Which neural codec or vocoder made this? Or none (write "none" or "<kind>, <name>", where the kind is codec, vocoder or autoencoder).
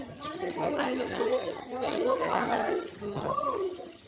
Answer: vocoder, HiFi-GAN